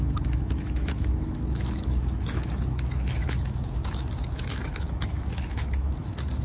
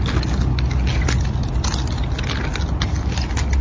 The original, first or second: second